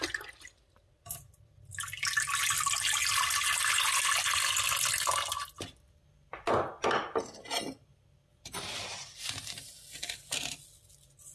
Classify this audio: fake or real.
real